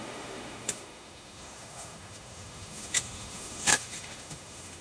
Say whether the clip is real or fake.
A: fake